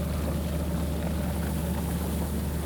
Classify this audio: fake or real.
real